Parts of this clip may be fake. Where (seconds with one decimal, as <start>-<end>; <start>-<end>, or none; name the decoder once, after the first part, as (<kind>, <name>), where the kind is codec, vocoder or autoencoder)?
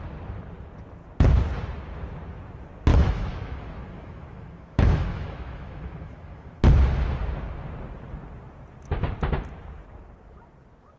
2.9-6.6 (autoencoder, DAC-VAE)